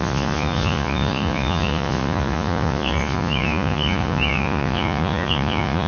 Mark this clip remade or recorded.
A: remade